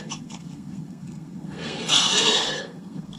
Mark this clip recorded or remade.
remade